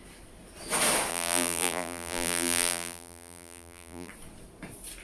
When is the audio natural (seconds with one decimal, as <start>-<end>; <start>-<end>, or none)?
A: 0.0-1.1; 4.1-5.0